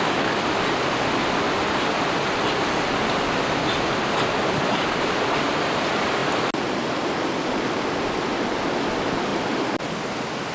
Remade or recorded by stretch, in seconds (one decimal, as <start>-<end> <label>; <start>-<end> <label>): 0.0-10.5 recorded